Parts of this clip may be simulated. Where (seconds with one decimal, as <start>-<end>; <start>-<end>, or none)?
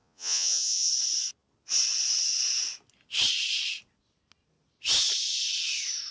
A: 0.0-0.9